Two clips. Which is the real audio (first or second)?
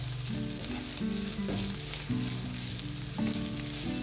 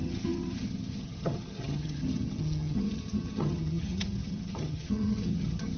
first